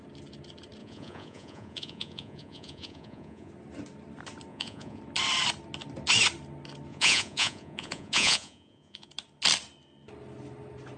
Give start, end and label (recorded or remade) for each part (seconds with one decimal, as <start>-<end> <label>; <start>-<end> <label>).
0.0-0.8 recorded; 0.8-3.5 remade; 3.5-4.5 recorded; 4.5-5.0 remade; 5.0-6.9 recorded; 6.9-9.1 remade; 9.1-11.0 recorded